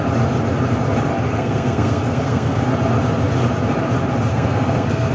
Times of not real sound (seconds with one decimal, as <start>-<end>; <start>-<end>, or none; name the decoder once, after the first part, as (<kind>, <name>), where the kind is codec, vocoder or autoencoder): 1.3-2.7 (codec, SNAC); 4.3-5.1